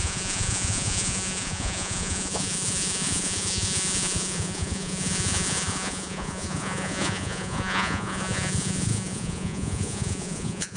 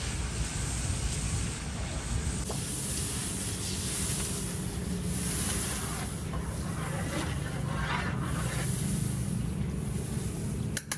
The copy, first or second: first